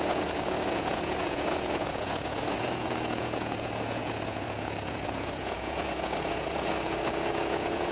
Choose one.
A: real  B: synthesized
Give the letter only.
B